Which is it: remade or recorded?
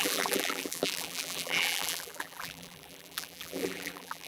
remade